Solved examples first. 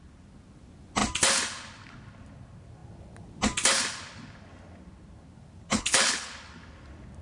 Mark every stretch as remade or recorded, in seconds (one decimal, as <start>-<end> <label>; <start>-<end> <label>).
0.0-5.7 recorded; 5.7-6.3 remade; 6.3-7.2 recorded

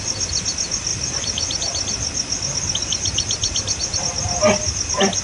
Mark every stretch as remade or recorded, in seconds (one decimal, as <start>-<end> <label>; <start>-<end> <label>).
0.0-5.2 recorded

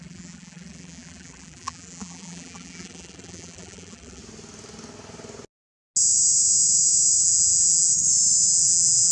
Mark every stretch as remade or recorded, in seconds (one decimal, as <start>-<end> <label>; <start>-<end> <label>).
0.0-4.2 remade; 4.2-7.2 recorded; 7.2-7.9 remade; 7.9-8.5 recorded; 8.5-9.1 remade